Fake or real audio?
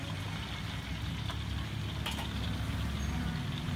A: real